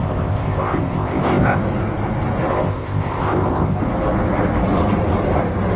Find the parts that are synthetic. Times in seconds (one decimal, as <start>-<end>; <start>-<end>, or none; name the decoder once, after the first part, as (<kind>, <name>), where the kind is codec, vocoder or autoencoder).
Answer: 0.0-1.6 (codec, ZipCodec); 2.5-3.8